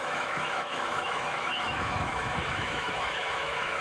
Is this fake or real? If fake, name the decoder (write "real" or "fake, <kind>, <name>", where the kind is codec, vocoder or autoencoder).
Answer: fake, autoencoder, DAC-VAE